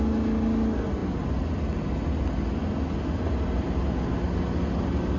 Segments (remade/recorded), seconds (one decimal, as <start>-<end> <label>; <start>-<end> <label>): 0.0-5.2 recorded